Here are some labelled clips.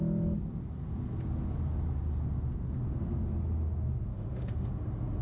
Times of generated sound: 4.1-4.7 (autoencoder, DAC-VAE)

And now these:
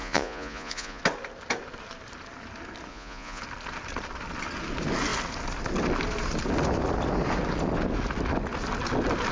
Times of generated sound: 0.0-1.0 (vocoder, Vocos); 2.9-3.4

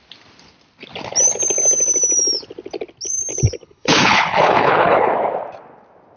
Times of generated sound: 3.3-5.1 (codec, HILCodec)

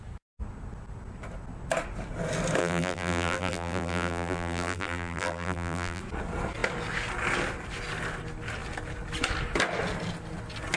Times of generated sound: 2.6-6.0 (vocoder, BigVGAN v2)

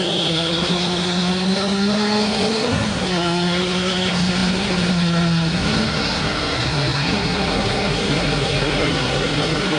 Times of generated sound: 0.0-9.8 (codec, SNAC)

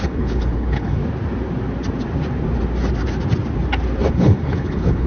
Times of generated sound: 0.0-1.0 (codec, HILCodec); 4.1-5.1